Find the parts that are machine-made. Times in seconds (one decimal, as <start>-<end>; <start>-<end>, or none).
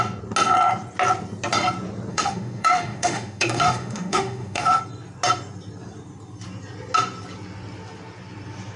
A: 2.1-4.8